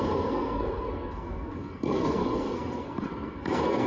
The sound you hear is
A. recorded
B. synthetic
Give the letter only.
B